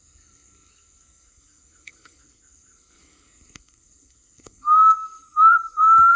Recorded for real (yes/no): no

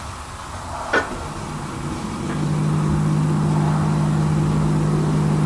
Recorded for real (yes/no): yes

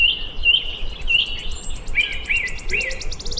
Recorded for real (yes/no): yes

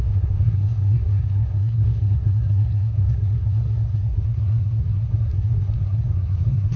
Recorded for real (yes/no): no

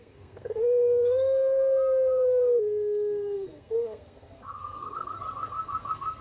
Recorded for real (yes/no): no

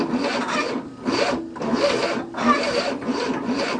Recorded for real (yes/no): yes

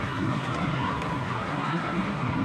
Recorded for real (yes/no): no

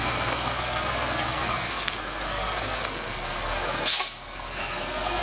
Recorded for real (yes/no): no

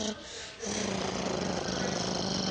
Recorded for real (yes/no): yes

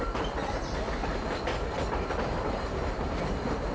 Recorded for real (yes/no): yes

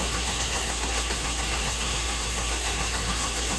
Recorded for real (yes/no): no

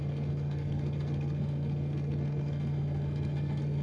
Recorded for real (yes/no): no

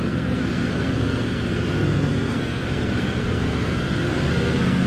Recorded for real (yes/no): no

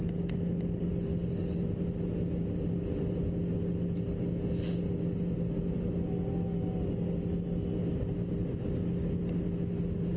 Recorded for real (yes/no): yes